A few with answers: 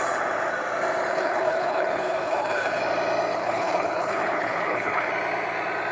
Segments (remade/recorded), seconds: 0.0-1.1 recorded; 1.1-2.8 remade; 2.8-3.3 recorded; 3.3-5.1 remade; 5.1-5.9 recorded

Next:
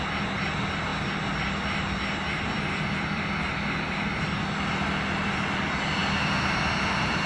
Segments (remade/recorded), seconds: 0.0-7.3 recorded

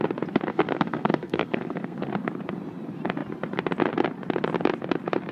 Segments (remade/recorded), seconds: 0.0-0.5 recorded; 0.5-2.1 remade; 2.1-5.3 recorded

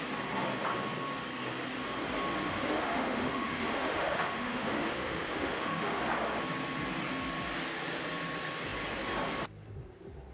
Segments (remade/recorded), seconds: 0.0-2.4 recorded; 2.4-6.0 remade; 6.0-10.3 recorded

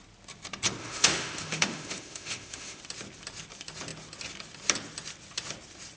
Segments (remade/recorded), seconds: 0.0-0.8 recorded; 0.8-2.8 remade; 2.8-6.0 recorded

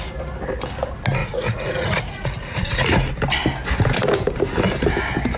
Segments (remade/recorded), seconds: 0.0-1.2 recorded; 1.2-3.1 remade; 3.1-5.4 recorded